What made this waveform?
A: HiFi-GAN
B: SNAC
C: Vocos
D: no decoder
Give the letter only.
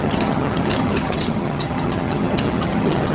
A